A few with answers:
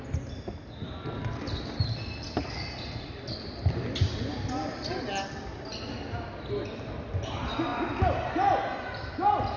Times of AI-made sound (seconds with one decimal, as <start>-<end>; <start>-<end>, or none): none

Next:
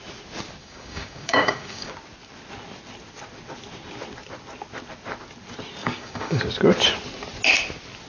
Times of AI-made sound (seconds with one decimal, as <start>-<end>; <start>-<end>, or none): 0.6-1.9; 5.8-6.4

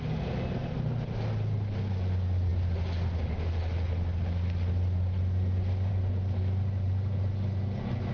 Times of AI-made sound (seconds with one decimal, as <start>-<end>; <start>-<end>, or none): none

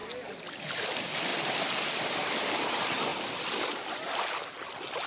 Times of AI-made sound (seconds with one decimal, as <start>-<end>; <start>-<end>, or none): none